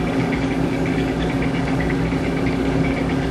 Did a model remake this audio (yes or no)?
yes